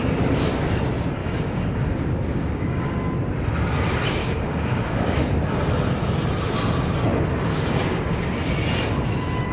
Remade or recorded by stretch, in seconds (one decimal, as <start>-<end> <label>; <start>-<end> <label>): 0.0-1.2 recorded; 1.2-1.8 remade; 1.8-2.3 recorded; 2.3-3.0 remade; 3.0-4.2 recorded; 4.2-5.2 remade; 5.2-7.5 recorded; 7.5-8.2 remade; 8.2-9.5 recorded